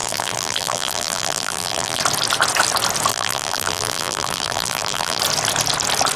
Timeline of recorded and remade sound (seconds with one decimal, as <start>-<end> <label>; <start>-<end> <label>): 0.0-2.0 remade; 2.0-3.1 recorded; 3.1-5.2 remade; 5.2-6.2 recorded